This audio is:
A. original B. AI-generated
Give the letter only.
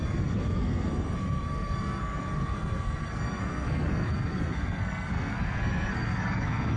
B